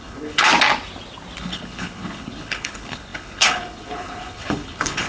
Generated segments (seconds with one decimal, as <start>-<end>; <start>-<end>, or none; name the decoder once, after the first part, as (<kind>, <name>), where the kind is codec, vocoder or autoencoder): 0.0-0.5 (codec, HILCodec); 1.4-5.1